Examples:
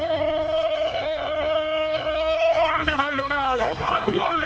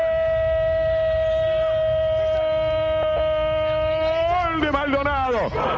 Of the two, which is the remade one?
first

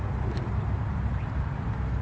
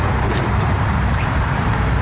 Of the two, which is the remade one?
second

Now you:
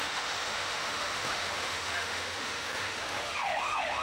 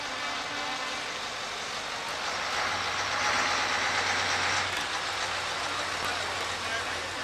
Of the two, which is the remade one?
first